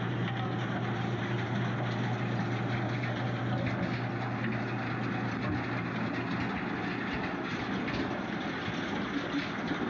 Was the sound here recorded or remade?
recorded